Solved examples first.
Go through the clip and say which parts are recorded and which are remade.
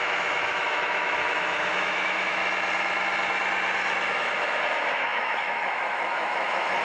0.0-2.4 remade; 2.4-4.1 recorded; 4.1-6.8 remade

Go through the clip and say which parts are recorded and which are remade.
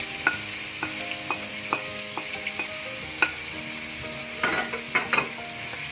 0.0-1.5 recorded; 1.5-2.3 remade; 2.3-5.9 recorded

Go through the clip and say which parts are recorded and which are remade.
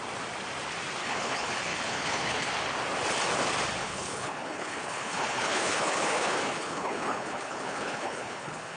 0.0-1.0 recorded; 1.0-2.5 remade; 2.5-3.8 recorded; 3.8-8.8 remade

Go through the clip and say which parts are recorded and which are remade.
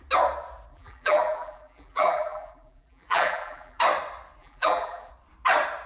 0.0-0.7 recorded; 0.7-3.8 remade; 3.8-4.4 recorded; 4.4-5.1 remade; 5.1-5.9 recorded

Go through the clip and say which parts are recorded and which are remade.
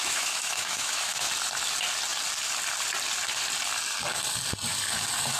0.0-1.3 remade; 1.3-5.4 recorded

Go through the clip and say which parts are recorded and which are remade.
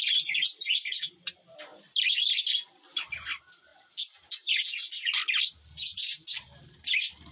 0.0-7.3 recorded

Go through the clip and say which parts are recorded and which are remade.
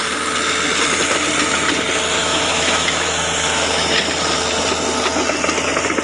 0.0-2.2 recorded; 2.2-4.0 remade; 4.0-6.0 recorded